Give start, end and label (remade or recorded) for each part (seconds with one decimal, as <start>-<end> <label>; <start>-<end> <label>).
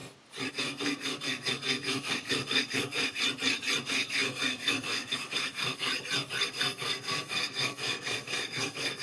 0.0-0.5 recorded; 0.5-3.2 remade; 3.2-3.8 recorded; 3.8-5.9 remade; 5.9-6.5 recorded; 6.5-9.0 remade